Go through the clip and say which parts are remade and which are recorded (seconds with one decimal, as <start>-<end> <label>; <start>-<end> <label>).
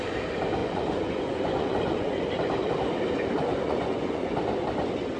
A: 0.0-0.6 recorded; 0.6-2.2 remade; 2.2-3.5 recorded; 3.5-4.3 remade; 4.3-5.2 recorded